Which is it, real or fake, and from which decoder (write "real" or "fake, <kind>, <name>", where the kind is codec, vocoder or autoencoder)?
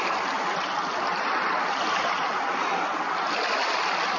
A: real